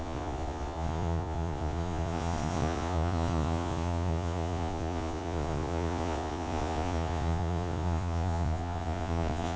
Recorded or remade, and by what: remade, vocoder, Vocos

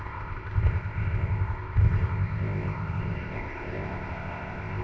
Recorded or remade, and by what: remade, codec, ZipCodec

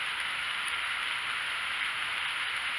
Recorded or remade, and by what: recorded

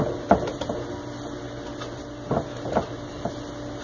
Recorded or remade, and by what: recorded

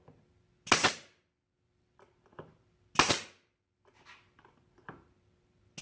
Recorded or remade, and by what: recorded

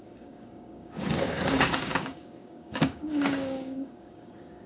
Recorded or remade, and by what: remade, codec, DAC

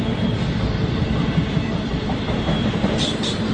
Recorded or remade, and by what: remade, vocoder, BigVGAN v2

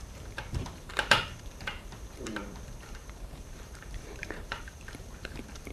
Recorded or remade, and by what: remade, vocoder, BigVGAN v2